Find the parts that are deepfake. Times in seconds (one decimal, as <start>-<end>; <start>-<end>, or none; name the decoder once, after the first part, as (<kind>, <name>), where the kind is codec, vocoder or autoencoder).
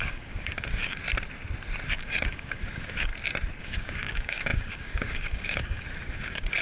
0.0-1.0 (codec, DAC); 1.9-3.1; 3.6-6.6